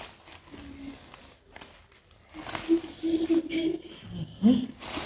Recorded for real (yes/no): yes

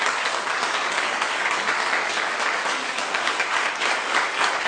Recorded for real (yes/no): no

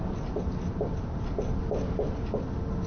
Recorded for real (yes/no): yes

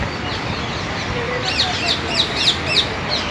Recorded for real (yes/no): yes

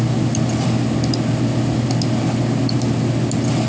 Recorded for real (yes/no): yes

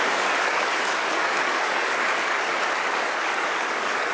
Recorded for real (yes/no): no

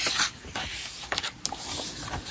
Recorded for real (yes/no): yes